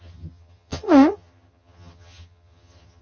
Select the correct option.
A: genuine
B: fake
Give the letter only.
B